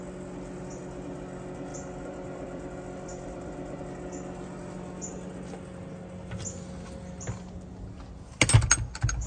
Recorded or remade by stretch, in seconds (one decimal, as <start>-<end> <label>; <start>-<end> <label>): 0.0-1.7 recorded; 1.7-3.8 remade; 3.8-9.3 recorded